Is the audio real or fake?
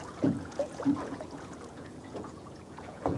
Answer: fake